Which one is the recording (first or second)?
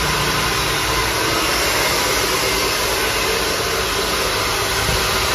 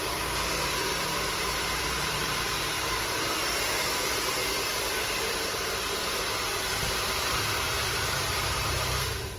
first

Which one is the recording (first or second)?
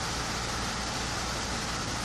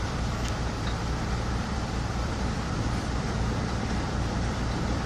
first